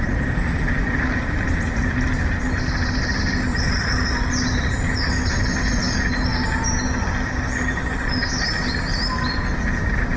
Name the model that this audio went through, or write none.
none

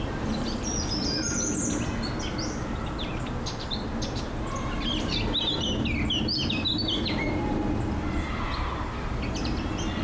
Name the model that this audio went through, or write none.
none